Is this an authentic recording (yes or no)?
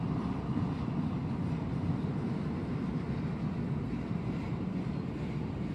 yes